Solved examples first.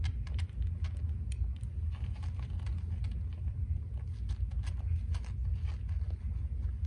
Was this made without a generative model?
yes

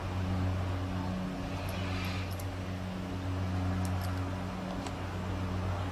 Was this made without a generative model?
yes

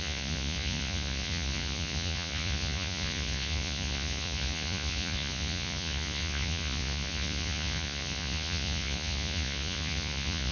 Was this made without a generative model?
no